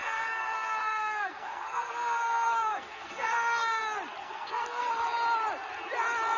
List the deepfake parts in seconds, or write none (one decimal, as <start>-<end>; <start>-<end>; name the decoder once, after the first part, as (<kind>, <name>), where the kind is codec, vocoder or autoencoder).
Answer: 0.0-3.8 (codec, SNAC); 4.2-4.9